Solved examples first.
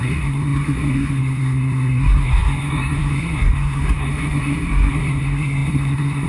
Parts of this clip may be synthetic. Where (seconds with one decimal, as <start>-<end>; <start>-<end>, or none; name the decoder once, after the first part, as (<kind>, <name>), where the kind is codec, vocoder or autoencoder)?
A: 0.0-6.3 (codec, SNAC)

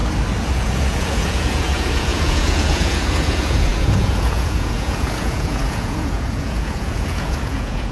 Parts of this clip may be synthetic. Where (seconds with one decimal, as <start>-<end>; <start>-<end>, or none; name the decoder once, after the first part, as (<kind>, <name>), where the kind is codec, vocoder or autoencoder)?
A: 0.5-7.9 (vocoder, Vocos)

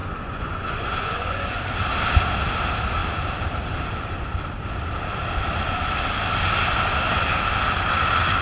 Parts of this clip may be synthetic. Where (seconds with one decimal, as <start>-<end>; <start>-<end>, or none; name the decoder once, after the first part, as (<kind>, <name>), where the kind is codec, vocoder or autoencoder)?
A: 0.0-1.6 (vocoder, Vocos)

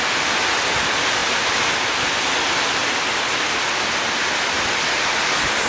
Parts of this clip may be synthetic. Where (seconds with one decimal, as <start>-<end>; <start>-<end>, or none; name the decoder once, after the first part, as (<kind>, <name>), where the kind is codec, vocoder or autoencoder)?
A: none

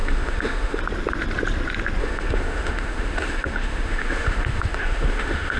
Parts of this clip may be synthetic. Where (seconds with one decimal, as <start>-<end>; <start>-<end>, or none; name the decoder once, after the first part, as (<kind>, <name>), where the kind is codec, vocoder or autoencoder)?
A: 0.0-0.8 (autoencoder, DAC-VAE); 2.0-5.6